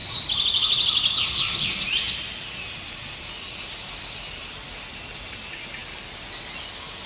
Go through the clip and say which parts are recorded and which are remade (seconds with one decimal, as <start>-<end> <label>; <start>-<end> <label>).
0.0-7.1 recorded